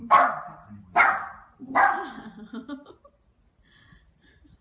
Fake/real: real